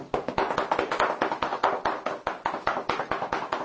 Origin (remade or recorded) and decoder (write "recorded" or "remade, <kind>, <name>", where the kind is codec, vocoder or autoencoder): recorded